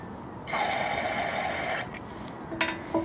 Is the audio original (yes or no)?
yes